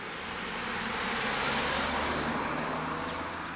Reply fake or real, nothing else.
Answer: real